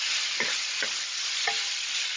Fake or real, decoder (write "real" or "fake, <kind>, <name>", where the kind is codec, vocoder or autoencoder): real